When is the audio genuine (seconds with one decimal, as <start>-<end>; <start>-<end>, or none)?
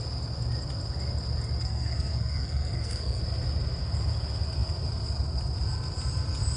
0.0-1.6; 3.2-6.6